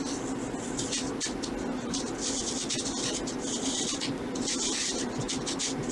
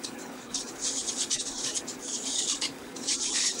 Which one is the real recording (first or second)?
first